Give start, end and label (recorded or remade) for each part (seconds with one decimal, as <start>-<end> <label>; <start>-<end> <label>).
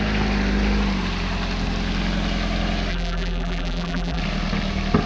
0.0-2.9 recorded; 2.9-4.2 remade; 4.2-5.1 recorded